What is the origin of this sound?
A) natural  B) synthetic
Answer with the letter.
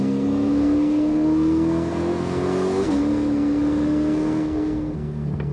B